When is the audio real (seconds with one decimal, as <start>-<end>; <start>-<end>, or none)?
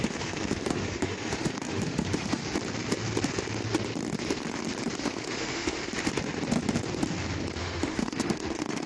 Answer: 2.4-5.0; 5.9-7.6